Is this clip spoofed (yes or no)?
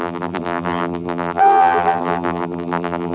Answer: yes